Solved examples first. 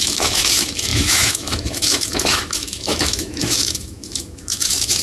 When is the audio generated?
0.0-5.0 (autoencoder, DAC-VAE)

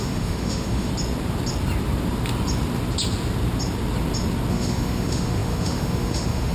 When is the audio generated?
0.0-0.9 (autoencoder, DAC-VAE); 4.5-6.5

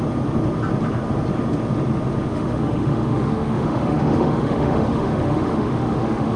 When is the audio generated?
2.3-6.4 (autoencoder, DAC-VAE)

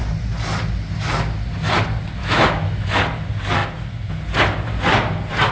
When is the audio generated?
2.2-3.0 (autoencoder, DAC-VAE)